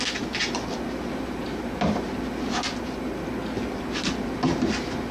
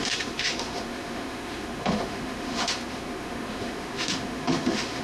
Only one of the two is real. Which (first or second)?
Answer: first